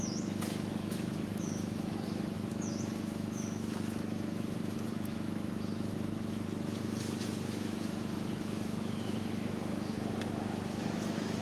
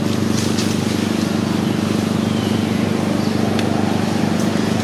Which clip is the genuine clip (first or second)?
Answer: second